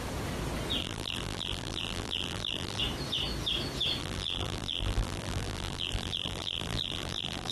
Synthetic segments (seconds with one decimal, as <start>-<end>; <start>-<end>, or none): 0.8-2.8; 4.0-7.5